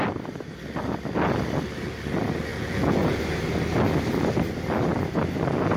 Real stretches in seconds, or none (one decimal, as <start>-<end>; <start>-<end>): 0.0-2.5; 3.2-5.8